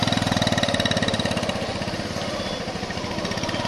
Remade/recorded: recorded